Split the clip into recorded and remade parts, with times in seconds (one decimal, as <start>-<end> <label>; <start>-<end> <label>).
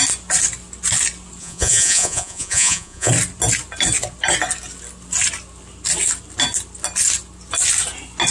0.0-1.4 recorded; 1.4-3.1 remade; 3.1-8.3 recorded